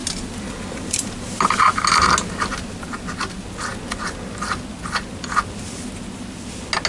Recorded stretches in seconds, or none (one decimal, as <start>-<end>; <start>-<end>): 0.0-6.9